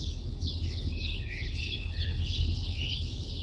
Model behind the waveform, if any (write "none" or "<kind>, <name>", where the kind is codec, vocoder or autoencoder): codec, HILCodec